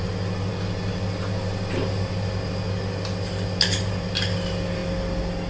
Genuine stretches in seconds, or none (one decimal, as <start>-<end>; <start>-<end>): 0.0-5.5